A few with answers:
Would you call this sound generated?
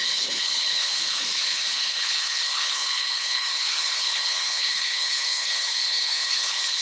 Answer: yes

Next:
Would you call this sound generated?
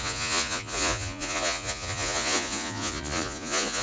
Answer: yes